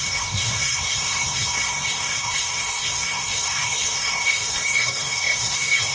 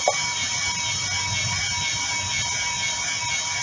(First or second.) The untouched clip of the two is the second